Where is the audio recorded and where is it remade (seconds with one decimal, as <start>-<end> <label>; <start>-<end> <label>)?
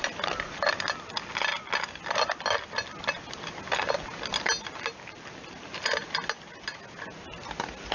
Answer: 0.0-7.9 recorded